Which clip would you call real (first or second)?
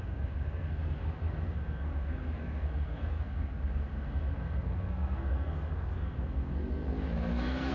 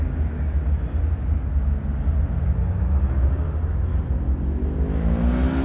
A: second